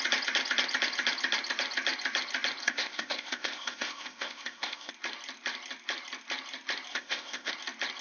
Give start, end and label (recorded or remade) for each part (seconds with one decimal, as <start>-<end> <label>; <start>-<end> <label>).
0.0-2.6 recorded; 2.6-4.9 remade; 4.9-6.9 recorded; 6.9-7.5 remade; 7.5-8.0 recorded